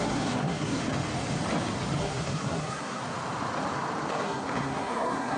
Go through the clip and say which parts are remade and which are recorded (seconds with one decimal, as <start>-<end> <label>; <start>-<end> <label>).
0.0-0.8 remade; 0.8-2.0 recorded; 2.0-3.0 remade; 3.0-4.1 recorded; 4.1-5.4 remade